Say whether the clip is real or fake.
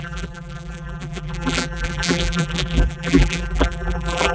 fake